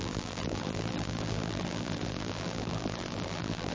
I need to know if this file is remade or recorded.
remade